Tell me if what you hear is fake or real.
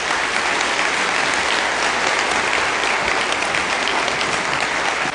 real